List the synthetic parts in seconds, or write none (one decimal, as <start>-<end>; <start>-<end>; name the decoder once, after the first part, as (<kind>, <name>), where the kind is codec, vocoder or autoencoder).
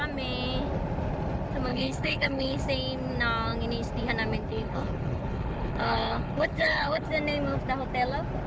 1.7-2.6 (codec, HILCodec); 4.5-7.1